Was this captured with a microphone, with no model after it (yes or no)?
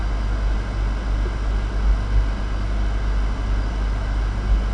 yes